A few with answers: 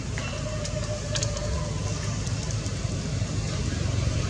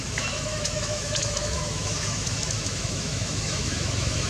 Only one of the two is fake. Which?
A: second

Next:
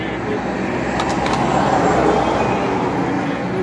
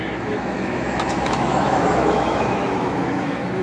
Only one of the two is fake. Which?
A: second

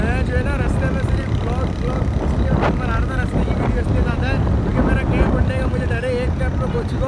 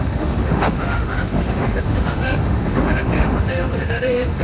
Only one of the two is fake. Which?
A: second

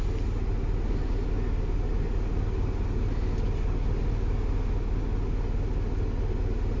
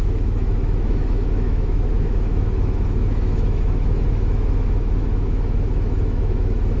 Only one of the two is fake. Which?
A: second